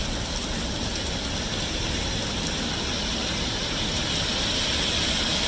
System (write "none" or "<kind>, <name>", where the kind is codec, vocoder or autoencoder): none